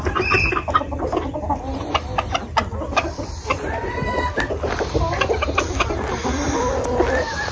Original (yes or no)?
yes